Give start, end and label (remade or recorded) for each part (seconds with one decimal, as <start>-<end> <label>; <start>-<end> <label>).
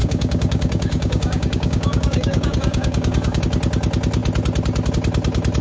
0.0-3.4 remade; 3.4-5.6 recorded